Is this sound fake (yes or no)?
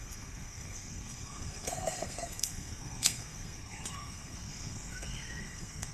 yes